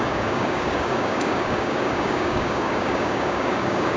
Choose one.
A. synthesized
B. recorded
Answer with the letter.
A